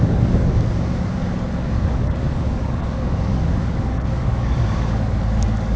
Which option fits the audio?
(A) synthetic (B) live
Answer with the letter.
A